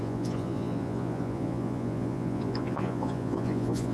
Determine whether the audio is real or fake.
fake